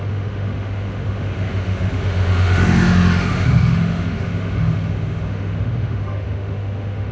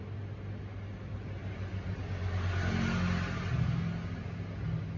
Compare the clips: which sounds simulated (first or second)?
first